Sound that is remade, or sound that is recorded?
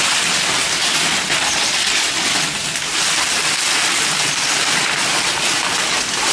recorded